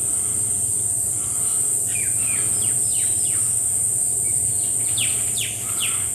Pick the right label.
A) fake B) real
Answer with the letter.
B